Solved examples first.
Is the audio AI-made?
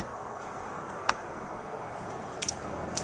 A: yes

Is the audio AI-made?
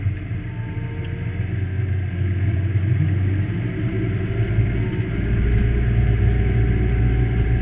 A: no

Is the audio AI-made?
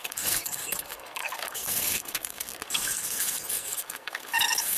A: yes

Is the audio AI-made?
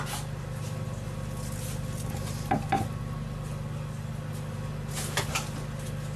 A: no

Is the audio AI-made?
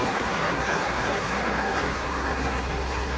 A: yes